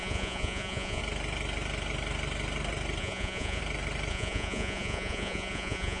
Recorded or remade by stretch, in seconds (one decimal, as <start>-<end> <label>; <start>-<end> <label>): 0.0-1.0 remade; 1.0-3.0 recorded; 3.0-3.6 remade; 3.6-4.1 recorded; 4.1-6.0 remade